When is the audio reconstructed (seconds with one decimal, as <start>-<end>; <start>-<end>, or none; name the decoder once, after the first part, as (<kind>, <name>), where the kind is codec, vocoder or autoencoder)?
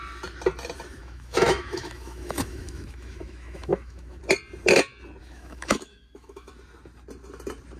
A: 1.0-4.2 (autoencoder, DAC-VAE); 5.2-6.5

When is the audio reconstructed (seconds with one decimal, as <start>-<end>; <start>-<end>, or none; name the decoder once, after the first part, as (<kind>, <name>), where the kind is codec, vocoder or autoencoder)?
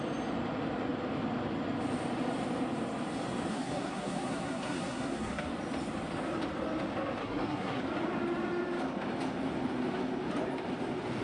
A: 3.5-5.5 (codec, SNAC); 7.2-7.8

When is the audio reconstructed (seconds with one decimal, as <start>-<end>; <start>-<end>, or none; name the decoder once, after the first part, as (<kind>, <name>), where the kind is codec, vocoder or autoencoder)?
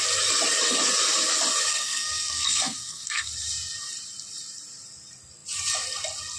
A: 1.7-3.3 (codec, SNAC)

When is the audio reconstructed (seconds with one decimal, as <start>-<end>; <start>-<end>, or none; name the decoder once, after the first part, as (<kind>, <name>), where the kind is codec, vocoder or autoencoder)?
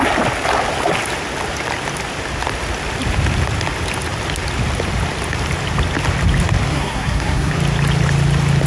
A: 6.7-7.5 (codec, SNAC)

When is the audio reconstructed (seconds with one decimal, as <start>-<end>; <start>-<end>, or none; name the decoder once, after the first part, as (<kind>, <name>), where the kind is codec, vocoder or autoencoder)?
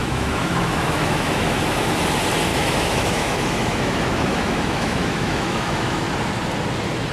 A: 0.0-1.9 (autoencoder, DAC-VAE); 2.5-6.0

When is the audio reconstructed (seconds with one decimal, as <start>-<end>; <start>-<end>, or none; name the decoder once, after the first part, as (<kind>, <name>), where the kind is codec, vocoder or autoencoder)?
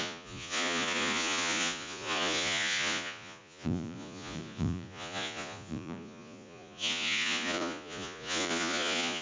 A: 0.0-9.2 (vocoder, Vocos)